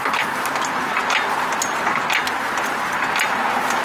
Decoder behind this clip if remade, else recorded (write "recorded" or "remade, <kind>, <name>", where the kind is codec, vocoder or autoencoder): recorded